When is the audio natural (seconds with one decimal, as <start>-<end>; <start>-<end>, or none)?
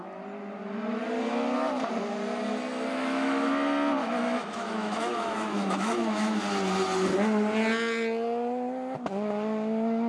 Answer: 0.0-2.9; 3.5-4.0; 6.4-10.1